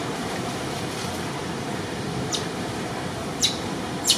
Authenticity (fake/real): fake